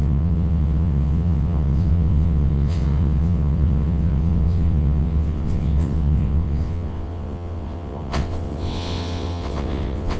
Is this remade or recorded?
remade